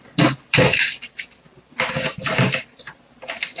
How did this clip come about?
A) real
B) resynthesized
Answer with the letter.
A